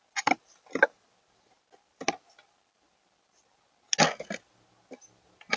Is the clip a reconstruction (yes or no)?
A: no